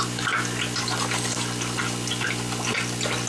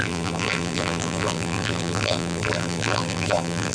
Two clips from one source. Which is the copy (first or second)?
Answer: second